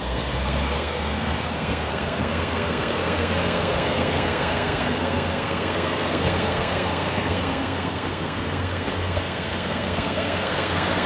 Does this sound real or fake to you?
fake